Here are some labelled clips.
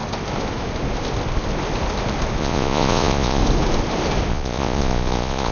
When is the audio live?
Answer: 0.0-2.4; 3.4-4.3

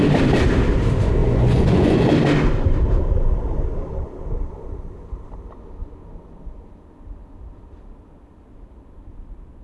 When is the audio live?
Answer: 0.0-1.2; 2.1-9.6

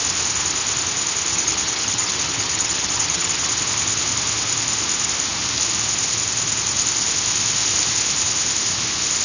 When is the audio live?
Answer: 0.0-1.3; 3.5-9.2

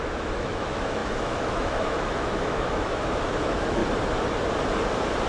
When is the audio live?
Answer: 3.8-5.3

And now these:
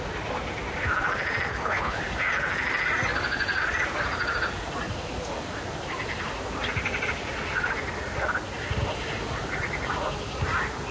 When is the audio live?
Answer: 0.0-1.5; 2.0-10.9

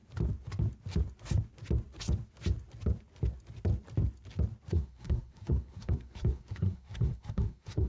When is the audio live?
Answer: 0.0-4.7